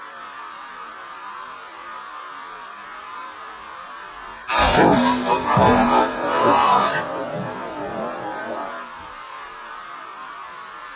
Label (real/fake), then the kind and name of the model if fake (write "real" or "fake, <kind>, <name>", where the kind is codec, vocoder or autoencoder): fake, vocoder, BigVGAN v2